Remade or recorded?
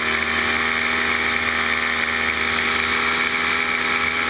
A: recorded